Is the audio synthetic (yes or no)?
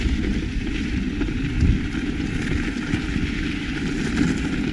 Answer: no